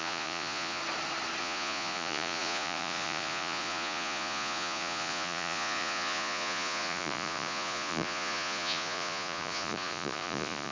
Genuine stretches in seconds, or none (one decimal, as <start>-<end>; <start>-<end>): 0.8-1.4